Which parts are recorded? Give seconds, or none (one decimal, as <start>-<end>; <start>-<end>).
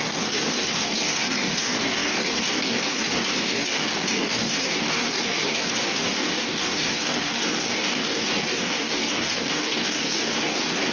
none